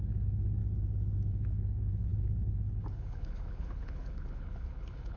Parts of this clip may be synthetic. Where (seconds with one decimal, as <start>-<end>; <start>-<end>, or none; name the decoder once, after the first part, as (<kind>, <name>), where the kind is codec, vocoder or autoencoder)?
0.0-0.6 (codec, HILCodec); 1.3-5.2